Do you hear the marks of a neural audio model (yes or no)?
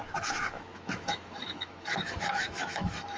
yes